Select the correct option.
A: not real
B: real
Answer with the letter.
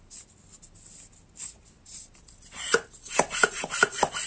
B